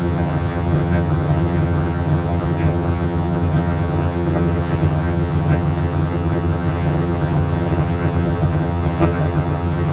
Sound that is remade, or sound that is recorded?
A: remade